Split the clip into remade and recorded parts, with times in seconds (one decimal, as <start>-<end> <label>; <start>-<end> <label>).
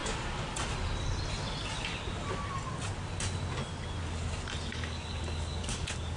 0.0-4.7 recorded; 4.7-6.2 remade